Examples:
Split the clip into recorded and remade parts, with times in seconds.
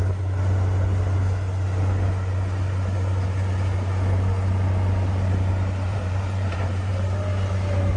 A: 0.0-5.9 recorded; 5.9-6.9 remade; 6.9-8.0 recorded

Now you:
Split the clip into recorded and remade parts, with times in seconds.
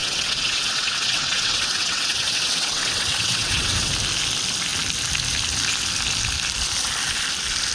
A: 0.0-3.9 remade; 3.9-7.7 recorded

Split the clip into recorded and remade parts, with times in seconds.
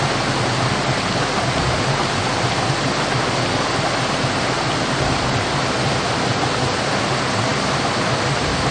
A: 0.0-8.7 recorded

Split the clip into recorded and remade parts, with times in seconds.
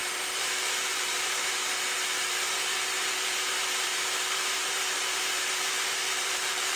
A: 0.0-1.6 remade; 1.6-2.2 recorded; 2.2-6.8 remade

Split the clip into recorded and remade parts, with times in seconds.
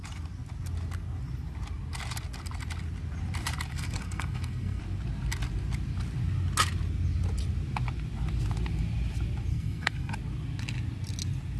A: 0.0-3.7 recorded; 3.7-4.8 remade; 4.8-9.5 recorded; 9.5-10.1 remade; 10.1-11.6 recorded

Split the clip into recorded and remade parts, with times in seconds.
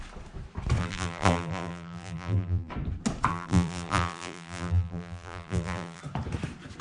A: 0.0-0.8 recorded; 0.8-2.7 remade; 2.7-3.3 recorded; 3.3-6.0 remade; 6.0-6.8 recorded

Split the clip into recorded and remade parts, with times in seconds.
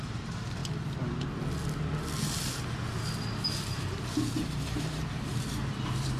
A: 0.0-0.6 remade; 0.6-4.3 recorded; 4.3-6.2 remade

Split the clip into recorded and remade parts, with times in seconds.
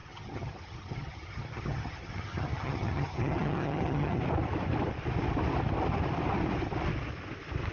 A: 0.0-4.2 remade; 4.2-7.7 recorded